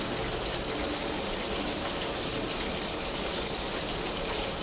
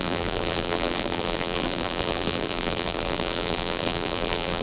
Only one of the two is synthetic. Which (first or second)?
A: second